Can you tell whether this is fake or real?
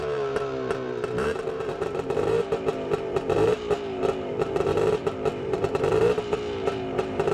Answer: fake